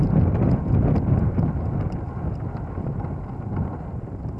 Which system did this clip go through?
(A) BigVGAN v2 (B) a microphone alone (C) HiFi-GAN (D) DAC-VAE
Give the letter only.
B